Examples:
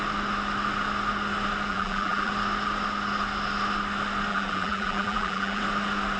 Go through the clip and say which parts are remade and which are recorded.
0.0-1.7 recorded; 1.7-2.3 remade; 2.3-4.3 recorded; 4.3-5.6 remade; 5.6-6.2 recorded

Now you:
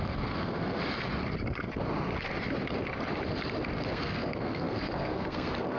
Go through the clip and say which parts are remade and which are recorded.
0.0-0.8 remade; 0.8-3.9 recorded; 3.9-5.8 remade

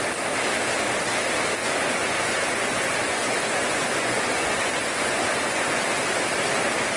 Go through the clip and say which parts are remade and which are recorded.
0.0-1.6 recorded; 1.6-5.8 remade; 5.8-7.0 recorded

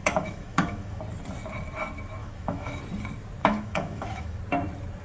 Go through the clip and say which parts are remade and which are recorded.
0.0-1.0 remade; 1.0-2.2 recorded; 2.2-2.8 remade; 2.8-3.4 recorded; 3.4-4.4 remade; 4.4-5.0 recorded

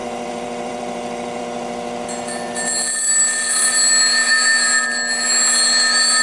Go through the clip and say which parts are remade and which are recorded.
0.0-1.4 remade; 1.4-6.2 recorded